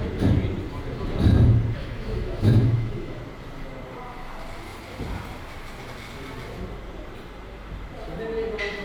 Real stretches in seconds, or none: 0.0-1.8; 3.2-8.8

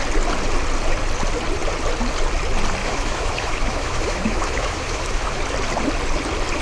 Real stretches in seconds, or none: 0.0-2.8; 5.4-6.6

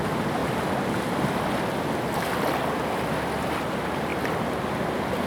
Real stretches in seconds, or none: 0.4-3.6; 4.1-5.3